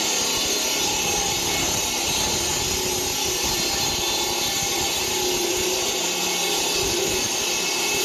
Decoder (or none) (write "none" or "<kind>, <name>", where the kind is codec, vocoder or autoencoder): none